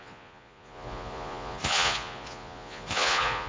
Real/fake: fake